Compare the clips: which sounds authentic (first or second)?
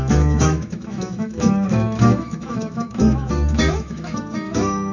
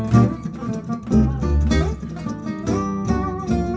second